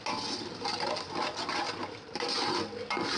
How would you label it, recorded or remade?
recorded